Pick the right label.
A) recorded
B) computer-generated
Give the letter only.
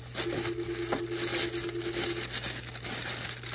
A